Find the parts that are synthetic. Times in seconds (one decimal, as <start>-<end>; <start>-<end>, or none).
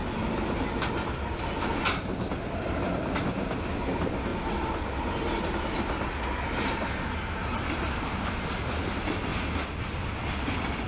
none